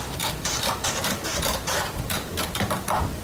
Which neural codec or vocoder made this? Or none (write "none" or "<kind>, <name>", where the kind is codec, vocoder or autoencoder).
none